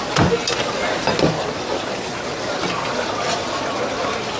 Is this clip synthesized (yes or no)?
no